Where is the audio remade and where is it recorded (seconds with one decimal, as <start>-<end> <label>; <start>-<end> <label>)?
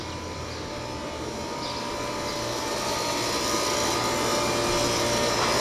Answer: 0.0-5.6 recorded